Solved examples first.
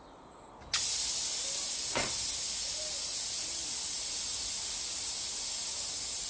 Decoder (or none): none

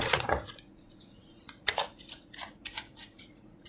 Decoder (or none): vocoder, Vocos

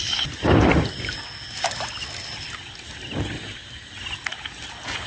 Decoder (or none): none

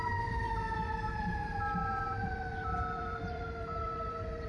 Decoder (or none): vocoder, BigVGAN v2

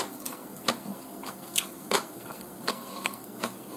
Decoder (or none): codec, SNAC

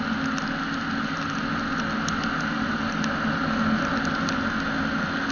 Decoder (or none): none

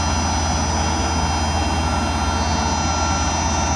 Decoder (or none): none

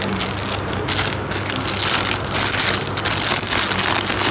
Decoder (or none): none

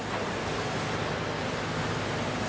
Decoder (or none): none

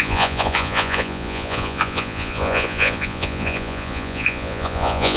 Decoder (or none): vocoder, Vocos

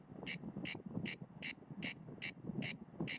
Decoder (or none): none